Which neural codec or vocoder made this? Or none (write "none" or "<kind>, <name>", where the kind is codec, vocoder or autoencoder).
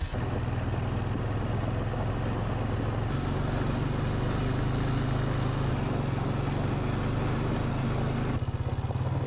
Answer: none